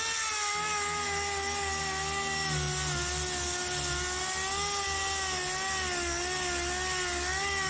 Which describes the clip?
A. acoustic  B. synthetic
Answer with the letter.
A